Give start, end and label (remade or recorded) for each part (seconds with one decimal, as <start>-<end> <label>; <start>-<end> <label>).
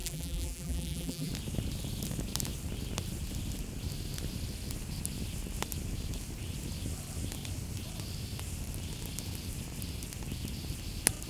0.0-1.3 remade; 1.3-11.3 recorded